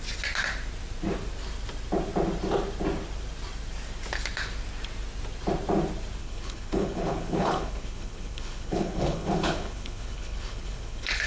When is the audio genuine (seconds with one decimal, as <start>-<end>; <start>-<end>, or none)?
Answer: 0.0-6.2